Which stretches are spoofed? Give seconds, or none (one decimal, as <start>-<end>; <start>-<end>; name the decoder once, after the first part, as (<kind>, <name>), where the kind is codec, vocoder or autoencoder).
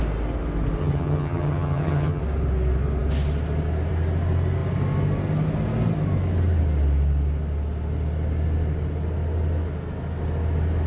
0.8-2.2 (vocoder, HiFi-GAN)